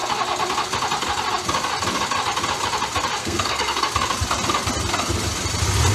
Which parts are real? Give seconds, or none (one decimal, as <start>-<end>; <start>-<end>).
0.0-3.2; 3.9-5.9